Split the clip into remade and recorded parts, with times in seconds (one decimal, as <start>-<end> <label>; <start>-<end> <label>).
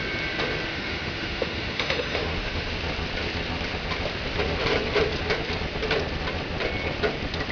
0.0-0.7 recorded; 0.7-2.7 remade; 2.7-7.5 recorded